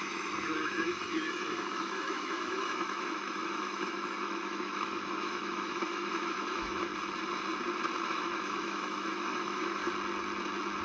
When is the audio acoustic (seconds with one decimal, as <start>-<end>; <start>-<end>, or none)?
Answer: 6.9-8.0; 9.8-10.8

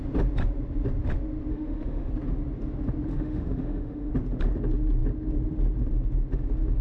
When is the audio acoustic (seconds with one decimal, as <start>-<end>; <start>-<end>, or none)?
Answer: 0.0-1.5; 2.1-3.1; 4.1-6.8

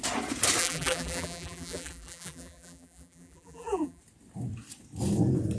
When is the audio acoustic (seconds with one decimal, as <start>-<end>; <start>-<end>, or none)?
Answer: 0.0-0.6; 4.0-5.6

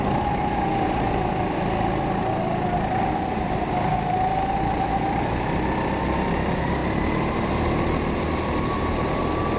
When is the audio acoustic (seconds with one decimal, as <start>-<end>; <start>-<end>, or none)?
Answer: 0.0-9.6

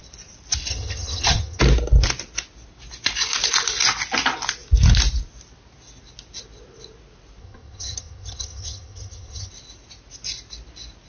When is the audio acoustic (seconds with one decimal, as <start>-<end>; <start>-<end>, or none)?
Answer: 0.0-0.7; 1.6-7.4; 9.5-11.1

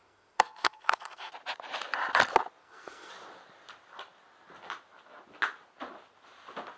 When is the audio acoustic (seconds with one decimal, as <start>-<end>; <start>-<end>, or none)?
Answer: 1.3-2.6; 3.1-6.8

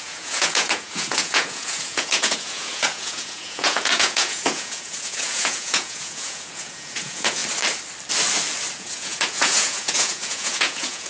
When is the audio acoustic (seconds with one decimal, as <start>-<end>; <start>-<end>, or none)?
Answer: 7.4-8.8

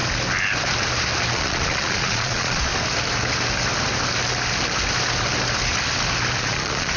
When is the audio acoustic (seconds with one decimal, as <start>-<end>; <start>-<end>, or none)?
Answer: 0.0-1.3; 2.7-6.4